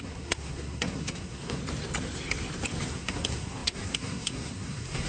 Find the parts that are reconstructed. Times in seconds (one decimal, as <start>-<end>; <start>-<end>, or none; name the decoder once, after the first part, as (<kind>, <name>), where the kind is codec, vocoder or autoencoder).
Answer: 0.0-1.6 (codec, SNAC); 2.9-5.1